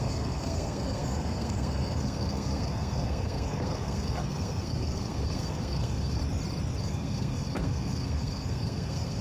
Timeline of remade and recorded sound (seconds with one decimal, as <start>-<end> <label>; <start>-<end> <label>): 0.0-6.2 remade; 6.2-6.8 recorded; 6.8-9.2 remade